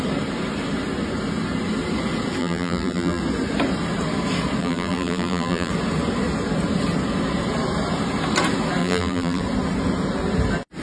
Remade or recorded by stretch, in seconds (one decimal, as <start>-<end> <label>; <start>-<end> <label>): 0.0-2.4 recorded; 2.4-3.2 remade; 3.2-4.6 recorded; 4.6-5.7 remade; 5.7-8.8 recorded; 8.8-9.4 remade; 9.4-10.8 recorded